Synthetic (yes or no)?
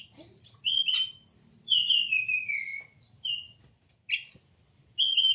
no